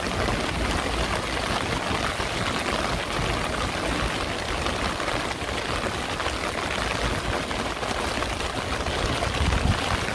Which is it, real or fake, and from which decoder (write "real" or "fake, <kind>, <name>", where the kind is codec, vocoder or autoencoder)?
real